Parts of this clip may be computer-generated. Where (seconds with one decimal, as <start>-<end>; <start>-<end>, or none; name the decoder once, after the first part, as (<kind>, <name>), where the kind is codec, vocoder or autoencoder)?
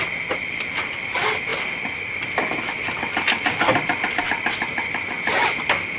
none